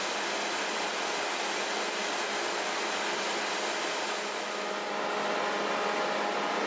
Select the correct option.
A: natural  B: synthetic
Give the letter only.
A